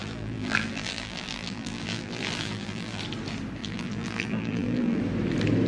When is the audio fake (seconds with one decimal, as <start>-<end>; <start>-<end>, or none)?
0.0-3.0; 3.6-5.0